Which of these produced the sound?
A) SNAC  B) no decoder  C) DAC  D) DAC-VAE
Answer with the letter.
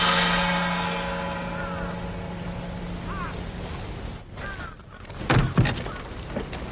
B